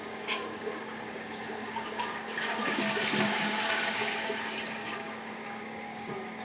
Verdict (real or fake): fake